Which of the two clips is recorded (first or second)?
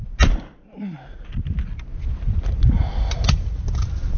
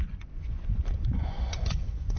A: first